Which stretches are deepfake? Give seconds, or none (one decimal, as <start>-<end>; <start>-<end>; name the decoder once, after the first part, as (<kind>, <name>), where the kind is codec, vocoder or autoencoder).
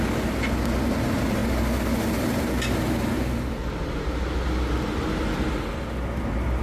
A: none